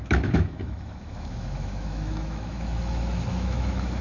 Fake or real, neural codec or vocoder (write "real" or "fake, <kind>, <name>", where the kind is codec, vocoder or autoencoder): fake, autoencoder, DAC-VAE